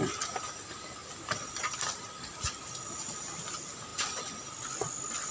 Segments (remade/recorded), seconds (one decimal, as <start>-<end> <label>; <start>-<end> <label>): 0.0-5.3 recorded